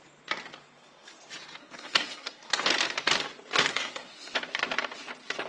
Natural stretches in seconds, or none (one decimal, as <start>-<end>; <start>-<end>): 0.0-1.6; 2.5-3.7; 4.3-5.5